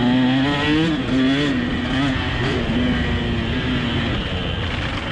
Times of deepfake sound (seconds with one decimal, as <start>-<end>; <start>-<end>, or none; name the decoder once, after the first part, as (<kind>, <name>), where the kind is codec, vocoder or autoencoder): none